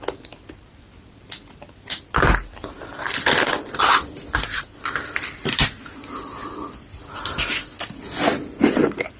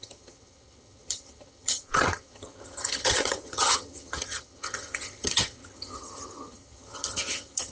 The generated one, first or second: second